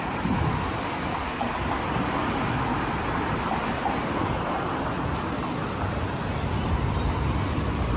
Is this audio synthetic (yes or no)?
no